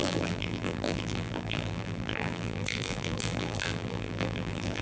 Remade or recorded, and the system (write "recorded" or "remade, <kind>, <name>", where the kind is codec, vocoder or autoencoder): remade, vocoder, BigVGAN v2